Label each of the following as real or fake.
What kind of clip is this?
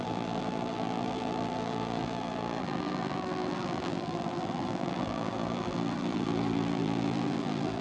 fake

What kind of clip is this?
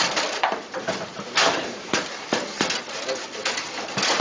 fake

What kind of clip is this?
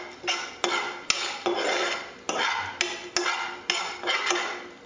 real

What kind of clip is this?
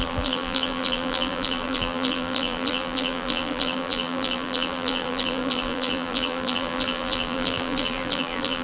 fake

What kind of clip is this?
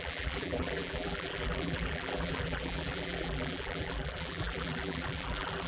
fake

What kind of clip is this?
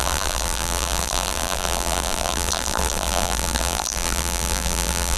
fake